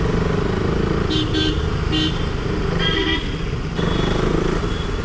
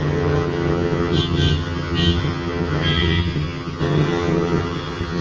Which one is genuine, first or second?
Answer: first